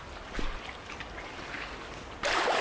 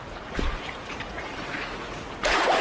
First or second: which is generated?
second